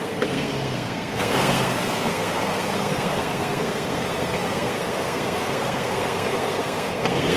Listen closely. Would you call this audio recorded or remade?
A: remade